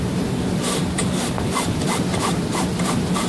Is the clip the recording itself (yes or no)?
yes